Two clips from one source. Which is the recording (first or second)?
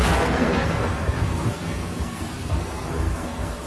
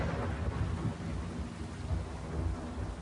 second